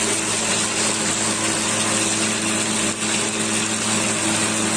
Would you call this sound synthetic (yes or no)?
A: no